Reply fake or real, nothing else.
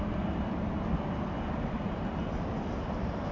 real